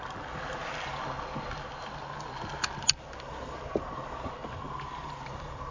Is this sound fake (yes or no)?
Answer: no